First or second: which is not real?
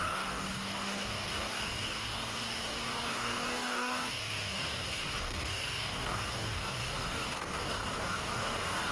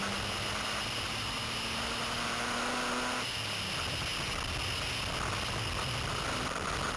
first